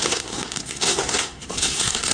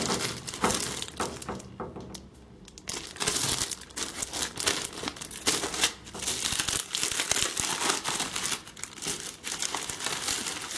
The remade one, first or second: first